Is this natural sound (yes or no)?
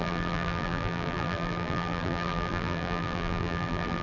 no